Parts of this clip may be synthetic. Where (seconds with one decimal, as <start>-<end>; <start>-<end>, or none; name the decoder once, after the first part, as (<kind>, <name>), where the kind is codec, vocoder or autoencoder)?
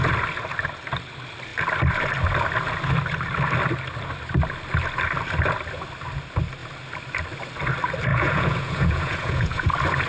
8.1-9.7 (vocoder, Vocos)